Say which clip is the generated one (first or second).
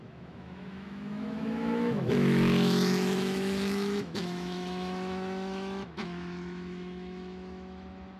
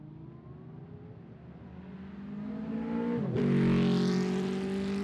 first